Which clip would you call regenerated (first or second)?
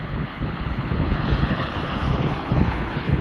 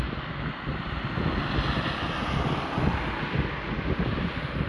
first